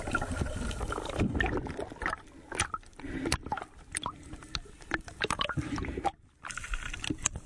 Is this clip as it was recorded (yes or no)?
yes